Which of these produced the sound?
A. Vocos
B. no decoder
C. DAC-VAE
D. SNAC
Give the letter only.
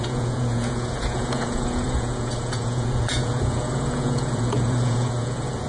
A